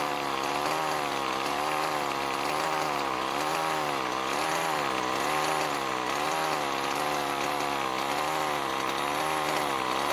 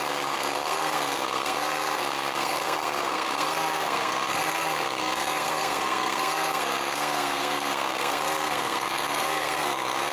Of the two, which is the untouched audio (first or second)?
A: first